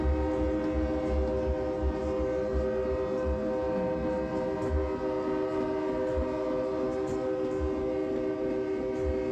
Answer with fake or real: real